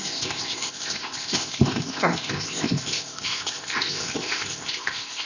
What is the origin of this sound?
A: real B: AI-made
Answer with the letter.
B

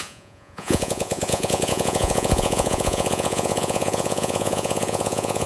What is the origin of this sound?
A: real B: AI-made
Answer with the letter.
B